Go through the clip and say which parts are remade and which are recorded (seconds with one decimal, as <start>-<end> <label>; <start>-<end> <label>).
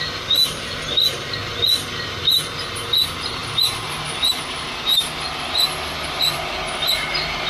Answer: 0.0-7.5 recorded